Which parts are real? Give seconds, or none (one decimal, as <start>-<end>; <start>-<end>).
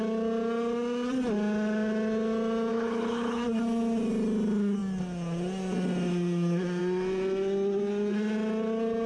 0.0-2.7; 3.4-9.1